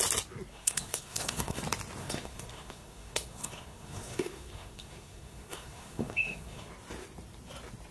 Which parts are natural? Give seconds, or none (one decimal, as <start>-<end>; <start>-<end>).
0.0-0.5; 1.6-2.0; 6.7-7.9